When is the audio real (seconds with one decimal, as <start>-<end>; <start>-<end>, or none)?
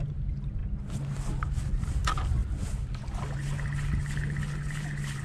0.0-5.2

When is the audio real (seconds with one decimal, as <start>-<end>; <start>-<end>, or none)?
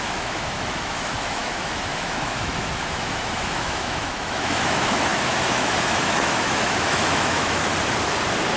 7.7-8.6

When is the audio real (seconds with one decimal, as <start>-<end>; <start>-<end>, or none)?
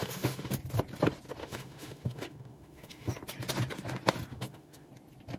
0.5-1.4; 3.1-4.3; 4.9-5.4